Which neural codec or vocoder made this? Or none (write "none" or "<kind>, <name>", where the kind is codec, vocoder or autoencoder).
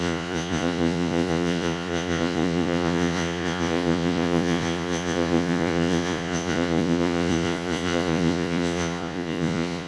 vocoder, Vocos